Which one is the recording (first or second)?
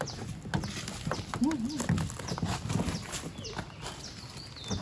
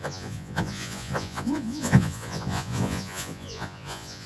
first